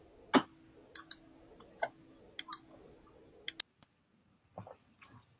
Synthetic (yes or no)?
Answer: no